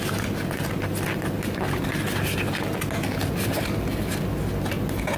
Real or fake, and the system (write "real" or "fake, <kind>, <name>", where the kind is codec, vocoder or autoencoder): real